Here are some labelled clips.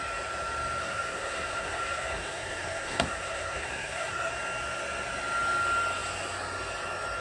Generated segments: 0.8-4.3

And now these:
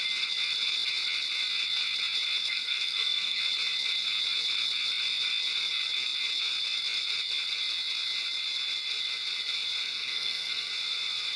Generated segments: 2.4-3.4; 9.8-10.7

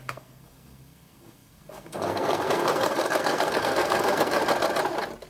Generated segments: 0.0-4.4

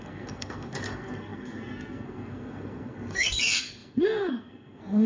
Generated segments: 0.0-5.1

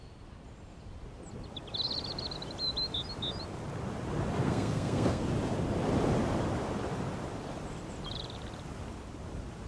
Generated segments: 4.4-5.2

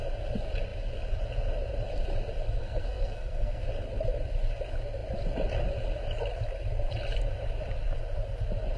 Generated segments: 2.6-3.6

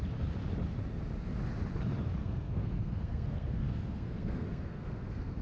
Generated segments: 2.2-5.4